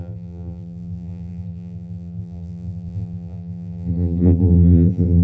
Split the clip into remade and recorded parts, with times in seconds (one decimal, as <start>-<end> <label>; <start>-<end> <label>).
0.0-5.2 remade